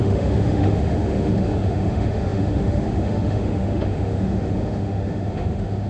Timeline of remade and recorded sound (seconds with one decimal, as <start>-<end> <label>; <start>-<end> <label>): 0.0-5.9 remade

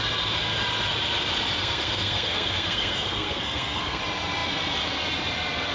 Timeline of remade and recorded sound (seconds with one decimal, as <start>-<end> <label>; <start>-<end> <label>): 0.0-1.6 recorded; 1.6-4.0 remade; 4.0-5.7 recorded